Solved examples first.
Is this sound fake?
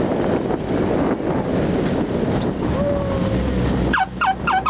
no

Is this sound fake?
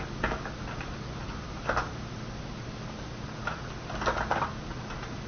no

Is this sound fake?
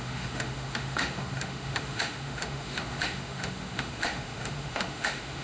yes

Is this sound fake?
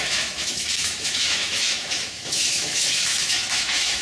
yes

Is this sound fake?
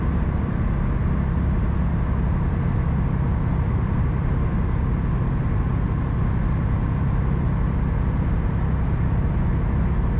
no